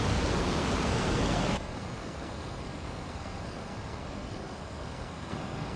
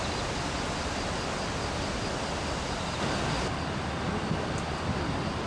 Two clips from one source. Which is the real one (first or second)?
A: second